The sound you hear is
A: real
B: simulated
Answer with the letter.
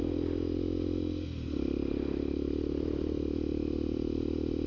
A